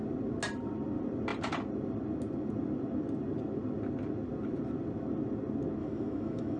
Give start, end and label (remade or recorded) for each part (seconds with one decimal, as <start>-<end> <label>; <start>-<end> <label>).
0.0-5.8 recorded; 5.8-6.6 remade